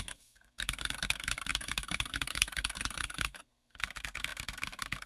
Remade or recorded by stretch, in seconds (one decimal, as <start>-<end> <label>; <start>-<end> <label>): 0.0-5.1 remade